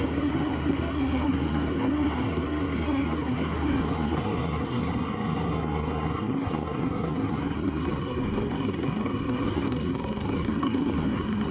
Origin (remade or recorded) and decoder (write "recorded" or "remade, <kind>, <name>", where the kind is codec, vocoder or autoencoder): remade, codec, SNAC